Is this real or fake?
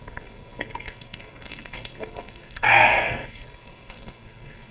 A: fake